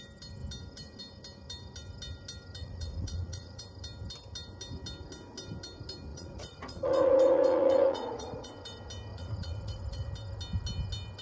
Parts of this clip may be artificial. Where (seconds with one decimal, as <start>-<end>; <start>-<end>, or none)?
2.6-3.6; 6.1-8.5; 9.1-10.1